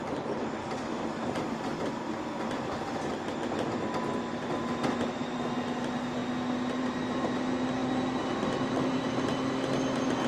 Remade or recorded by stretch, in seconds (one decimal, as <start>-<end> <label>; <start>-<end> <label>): 0.0-10.3 recorded